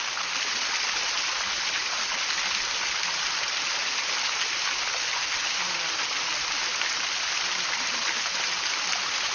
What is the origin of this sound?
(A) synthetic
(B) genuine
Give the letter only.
B